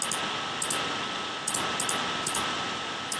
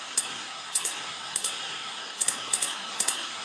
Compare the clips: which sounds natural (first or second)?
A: first